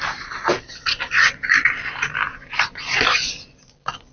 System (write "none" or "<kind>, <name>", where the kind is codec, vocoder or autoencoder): none